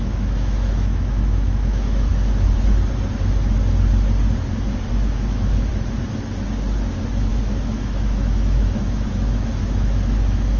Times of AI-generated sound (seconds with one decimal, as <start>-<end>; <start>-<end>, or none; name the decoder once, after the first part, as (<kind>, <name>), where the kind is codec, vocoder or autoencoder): 0.0-2.1 (autoencoder, DAC-VAE); 4.9-5.7; 7.3-10.6